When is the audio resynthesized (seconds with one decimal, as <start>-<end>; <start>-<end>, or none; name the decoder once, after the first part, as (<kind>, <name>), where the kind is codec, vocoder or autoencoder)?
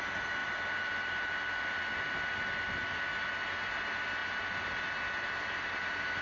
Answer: none